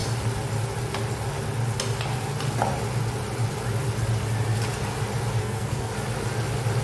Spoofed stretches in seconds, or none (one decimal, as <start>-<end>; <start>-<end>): 5.4-5.9